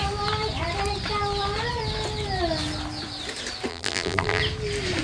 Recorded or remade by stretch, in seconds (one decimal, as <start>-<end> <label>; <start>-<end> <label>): 0.0-3.7 recorded; 3.7-4.4 remade; 4.4-5.0 recorded